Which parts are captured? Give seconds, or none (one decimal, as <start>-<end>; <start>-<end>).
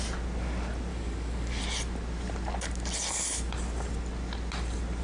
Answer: 0.0-0.9; 1.6-5.0